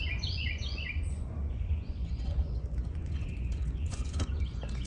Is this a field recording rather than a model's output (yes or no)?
no